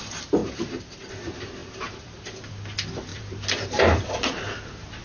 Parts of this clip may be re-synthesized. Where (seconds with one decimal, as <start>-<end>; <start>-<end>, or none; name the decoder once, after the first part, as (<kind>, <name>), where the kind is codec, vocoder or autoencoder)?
0.4-1.1 (vocoder, BigVGAN v2); 1.6-2.2; 3.1-4.1